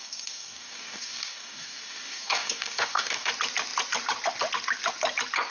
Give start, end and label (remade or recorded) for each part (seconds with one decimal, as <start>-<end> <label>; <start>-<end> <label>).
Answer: 0.0-3.3 remade; 3.3-5.5 recorded